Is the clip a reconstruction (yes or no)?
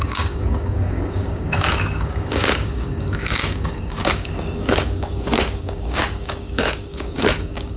yes